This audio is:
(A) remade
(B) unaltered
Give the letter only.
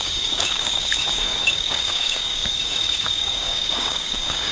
A